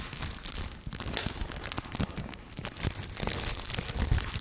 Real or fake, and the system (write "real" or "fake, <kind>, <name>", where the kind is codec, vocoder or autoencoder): real